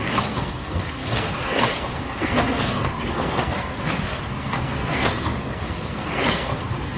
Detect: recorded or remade remade